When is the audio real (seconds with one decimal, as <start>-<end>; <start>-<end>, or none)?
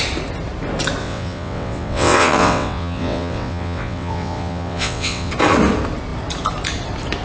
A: 0.0-1.0; 5.3-7.2